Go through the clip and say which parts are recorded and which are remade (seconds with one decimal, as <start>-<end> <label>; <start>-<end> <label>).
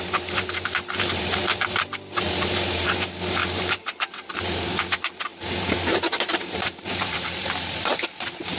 0.0-1.4 remade; 1.4-2.2 recorded; 2.2-8.6 remade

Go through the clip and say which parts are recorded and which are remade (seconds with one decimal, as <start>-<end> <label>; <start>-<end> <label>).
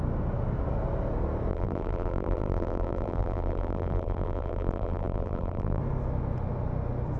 0.0-1.5 recorded; 1.5-5.8 remade; 5.8-7.2 recorded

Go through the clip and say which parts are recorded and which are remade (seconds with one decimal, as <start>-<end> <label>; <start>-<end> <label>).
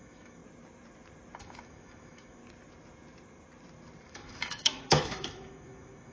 0.0-0.4 remade; 0.4-1.4 recorded; 1.4-2.4 remade; 2.4-4.1 recorded; 4.1-6.1 remade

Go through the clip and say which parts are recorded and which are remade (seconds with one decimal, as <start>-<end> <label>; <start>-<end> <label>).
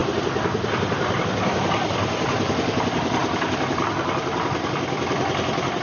0.0-5.8 recorded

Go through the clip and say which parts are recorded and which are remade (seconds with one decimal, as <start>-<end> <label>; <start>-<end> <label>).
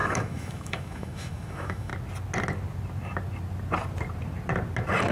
0.0-1.9 remade; 1.9-5.1 recorded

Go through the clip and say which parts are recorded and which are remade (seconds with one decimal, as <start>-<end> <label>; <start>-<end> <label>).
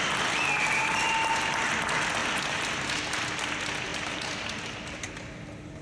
0.0-1.0 recorded; 1.0-1.7 remade; 1.7-2.2 recorded; 2.2-3.0 remade; 3.0-3.9 recorded; 3.9-4.7 remade; 4.7-5.8 recorded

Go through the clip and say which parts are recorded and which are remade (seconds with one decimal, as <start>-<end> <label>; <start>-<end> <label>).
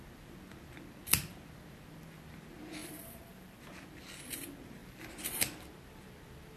0.0-2.8 recorded; 2.8-3.6 remade; 3.6-4.8 recorded; 4.8-5.4 remade; 5.4-6.6 recorded